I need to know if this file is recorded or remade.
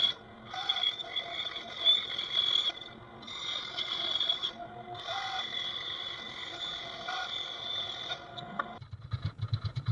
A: recorded